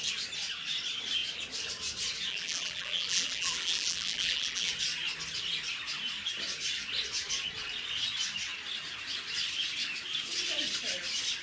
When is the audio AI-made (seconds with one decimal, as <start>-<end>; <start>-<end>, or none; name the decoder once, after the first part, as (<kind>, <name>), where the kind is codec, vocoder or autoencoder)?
2.3-4.7 (vocoder, BigVGAN v2)